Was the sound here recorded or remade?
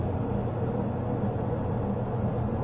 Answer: recorded